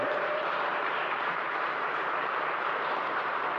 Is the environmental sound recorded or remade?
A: remade